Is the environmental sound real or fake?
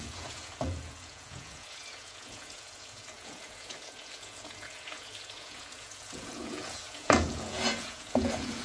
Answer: fake